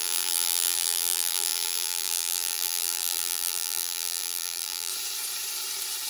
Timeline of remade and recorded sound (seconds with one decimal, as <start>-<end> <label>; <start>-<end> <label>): 0.0-4.9 remade; 4.9-6.1 recorded